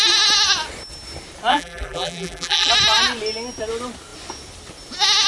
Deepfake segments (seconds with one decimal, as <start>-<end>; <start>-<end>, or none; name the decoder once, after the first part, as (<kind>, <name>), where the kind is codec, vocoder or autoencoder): 1.5-2.7 (vocoder, BigVGAN v2)